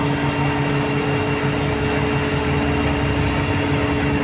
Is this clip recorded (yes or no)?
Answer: yes